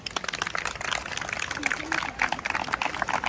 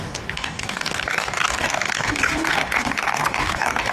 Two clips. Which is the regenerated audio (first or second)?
second